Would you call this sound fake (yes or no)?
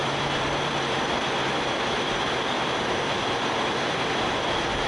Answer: yes